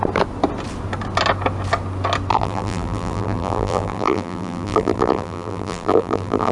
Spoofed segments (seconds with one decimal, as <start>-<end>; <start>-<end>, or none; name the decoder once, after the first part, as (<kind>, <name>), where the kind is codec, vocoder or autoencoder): 2.3-6.5 (vocoder, BigVGAN v2)